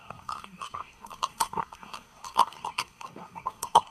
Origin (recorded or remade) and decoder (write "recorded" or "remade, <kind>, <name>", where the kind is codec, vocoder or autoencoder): remade, codec, SNAC